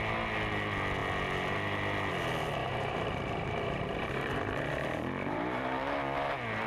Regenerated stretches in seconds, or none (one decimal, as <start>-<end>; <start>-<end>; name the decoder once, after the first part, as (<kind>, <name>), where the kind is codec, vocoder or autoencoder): 2.6-5.6 (vocoder, BigVGAN v2)